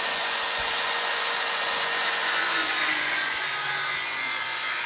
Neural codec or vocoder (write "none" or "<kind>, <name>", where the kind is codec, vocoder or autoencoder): vocoder, Vocos